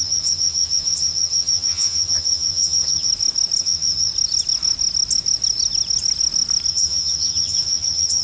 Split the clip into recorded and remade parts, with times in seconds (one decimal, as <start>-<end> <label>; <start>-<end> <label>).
0.0-3.1 remade; 3.1-3.6 recorded; 3.6-4.1 remade; 4.1-6.7 recorded; 6.7-8.2 remade